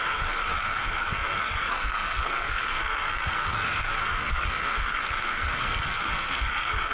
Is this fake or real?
fake